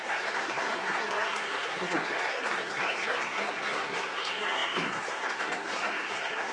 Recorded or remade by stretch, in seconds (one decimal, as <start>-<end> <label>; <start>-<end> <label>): 0.0-6.5 remade